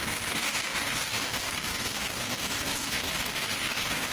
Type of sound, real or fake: fake